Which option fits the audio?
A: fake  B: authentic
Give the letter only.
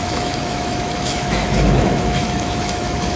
A